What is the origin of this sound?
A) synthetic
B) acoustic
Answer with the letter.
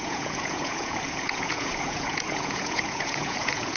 A